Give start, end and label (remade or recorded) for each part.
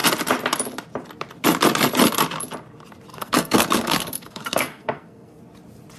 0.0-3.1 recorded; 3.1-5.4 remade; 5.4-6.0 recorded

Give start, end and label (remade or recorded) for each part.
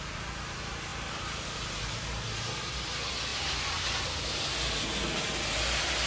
0.0-6.1 recorded